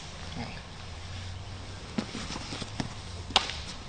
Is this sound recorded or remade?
recorded